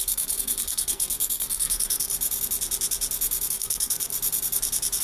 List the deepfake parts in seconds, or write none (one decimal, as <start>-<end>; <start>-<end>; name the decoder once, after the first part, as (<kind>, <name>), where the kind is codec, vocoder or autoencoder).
0.0-2.1 (codec, SNAC); 3.5-4.1